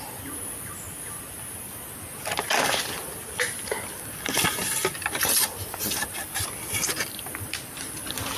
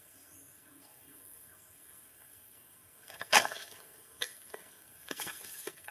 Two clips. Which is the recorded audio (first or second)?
first